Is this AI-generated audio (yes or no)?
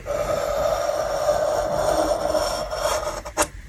no